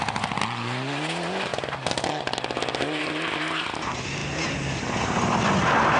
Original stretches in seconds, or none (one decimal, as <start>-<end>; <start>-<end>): 0.0-6.0